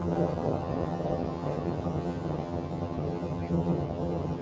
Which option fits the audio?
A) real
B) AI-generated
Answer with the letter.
B